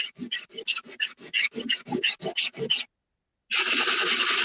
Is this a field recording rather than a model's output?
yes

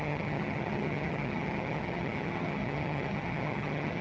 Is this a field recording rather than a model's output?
no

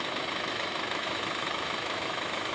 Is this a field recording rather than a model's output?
no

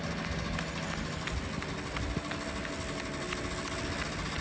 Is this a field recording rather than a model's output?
yes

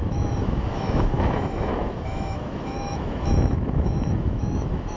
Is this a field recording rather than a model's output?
no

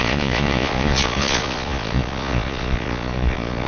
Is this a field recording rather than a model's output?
no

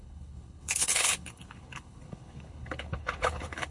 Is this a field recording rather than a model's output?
no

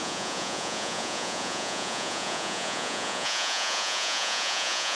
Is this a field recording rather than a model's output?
no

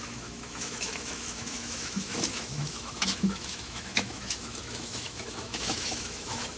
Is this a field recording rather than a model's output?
no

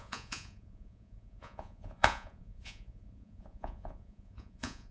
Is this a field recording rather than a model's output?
no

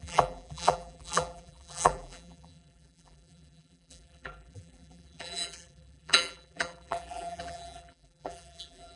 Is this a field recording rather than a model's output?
no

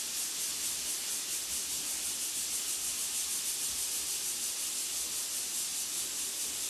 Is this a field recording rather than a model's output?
yes